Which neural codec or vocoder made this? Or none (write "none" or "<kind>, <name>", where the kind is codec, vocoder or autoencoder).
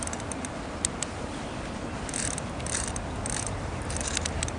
none